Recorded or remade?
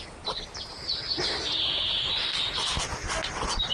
remade